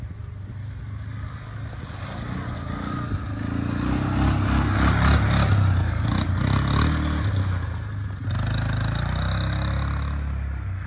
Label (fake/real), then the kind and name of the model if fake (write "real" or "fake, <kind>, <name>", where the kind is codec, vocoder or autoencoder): real